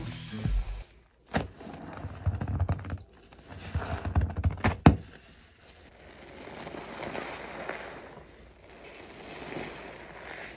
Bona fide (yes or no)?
yes